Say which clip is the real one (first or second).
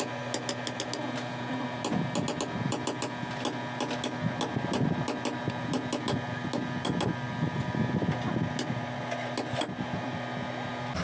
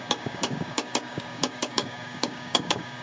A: first